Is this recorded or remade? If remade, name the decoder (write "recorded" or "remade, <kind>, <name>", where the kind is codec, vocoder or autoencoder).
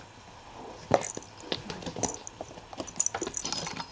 recorded